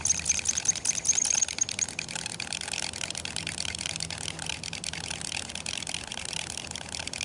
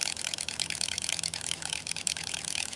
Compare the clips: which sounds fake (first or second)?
second